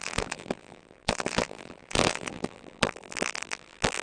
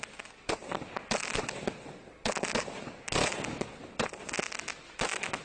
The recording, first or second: second